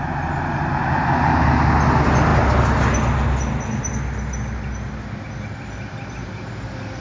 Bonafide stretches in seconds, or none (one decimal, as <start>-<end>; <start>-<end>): 0.0-7.0